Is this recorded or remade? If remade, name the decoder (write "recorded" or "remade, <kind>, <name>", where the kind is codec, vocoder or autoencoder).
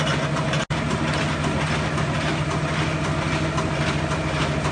recorded